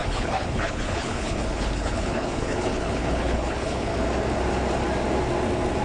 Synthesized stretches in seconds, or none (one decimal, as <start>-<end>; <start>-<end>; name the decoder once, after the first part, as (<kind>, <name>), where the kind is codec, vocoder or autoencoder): 0.0-3.9 (codec, HILCodec)